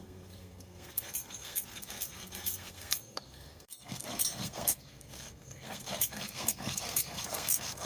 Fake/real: fake